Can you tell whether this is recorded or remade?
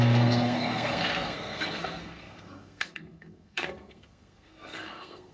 remade